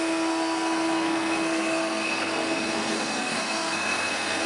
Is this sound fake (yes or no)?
yes